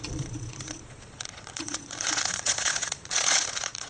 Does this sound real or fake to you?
fake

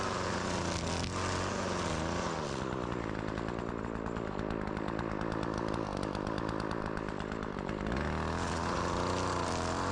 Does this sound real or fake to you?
real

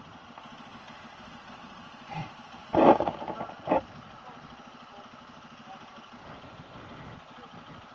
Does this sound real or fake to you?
real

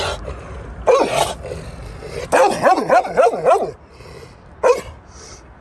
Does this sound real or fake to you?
real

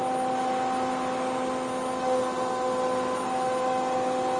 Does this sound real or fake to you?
real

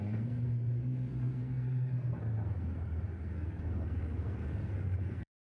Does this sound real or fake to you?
fake